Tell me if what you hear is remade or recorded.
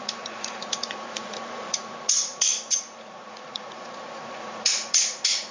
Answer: remade